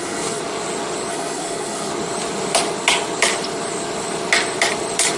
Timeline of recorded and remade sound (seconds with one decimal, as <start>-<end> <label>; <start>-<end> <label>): 0.0-0.4 remade; 0.4-1.1 recorded; 1.1-1.9 remade; 1.9-5.2 recorded